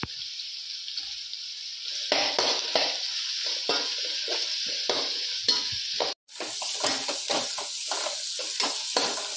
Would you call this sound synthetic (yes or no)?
no